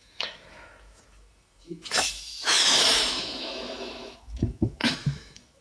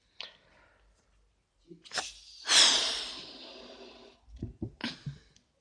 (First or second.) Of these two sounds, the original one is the second